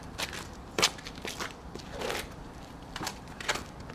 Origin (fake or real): fake